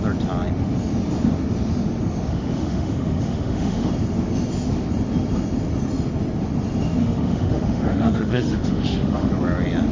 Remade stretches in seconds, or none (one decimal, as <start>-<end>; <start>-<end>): 2.3-3.9; 7.0-9.3